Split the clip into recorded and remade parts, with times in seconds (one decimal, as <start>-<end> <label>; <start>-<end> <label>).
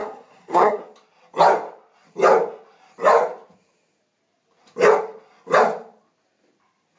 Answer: 0.0-0.8 remade; 0.8-7.0 recorded